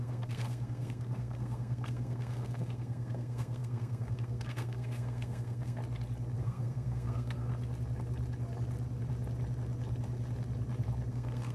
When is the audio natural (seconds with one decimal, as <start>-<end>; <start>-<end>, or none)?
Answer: 5.8-6.4; 7.5-11.1